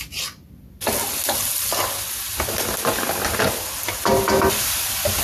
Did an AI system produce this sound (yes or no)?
no